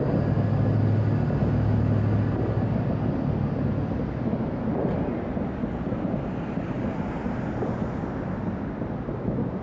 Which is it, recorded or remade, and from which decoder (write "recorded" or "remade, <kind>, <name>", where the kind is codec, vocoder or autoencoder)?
recorded